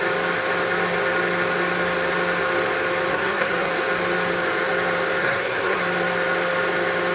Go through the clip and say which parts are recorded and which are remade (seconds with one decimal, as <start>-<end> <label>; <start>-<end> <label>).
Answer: 0.0-3.1 recorded; 3.1-3.7 remade; 3.7-5.2 recorded; 5.2-5.8 remade; 5.8-7.1 recorded

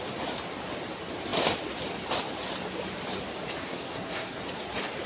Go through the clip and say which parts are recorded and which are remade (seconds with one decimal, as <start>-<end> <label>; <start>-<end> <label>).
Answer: 0.0-3.6 recorded; 3.6-4.4 remade; 4.4-5.1 recorded